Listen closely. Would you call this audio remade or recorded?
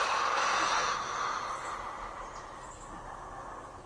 recorded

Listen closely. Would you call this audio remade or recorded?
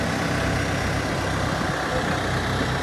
recorded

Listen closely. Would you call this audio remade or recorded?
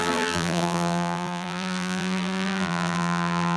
remade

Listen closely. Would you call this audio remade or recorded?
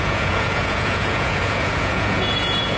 remade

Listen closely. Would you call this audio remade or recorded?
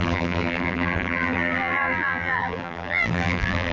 remade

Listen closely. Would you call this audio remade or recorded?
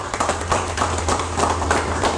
remade